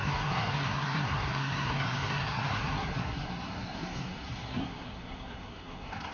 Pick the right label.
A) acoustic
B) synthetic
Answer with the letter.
B